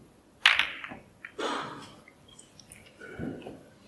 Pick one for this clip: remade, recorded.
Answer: recorded